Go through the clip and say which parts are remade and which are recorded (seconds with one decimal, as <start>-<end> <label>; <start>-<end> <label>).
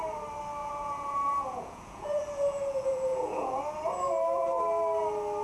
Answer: 0.0-0.6 recorded; 0.6-3.6 remade; 3.6-5.4 recorded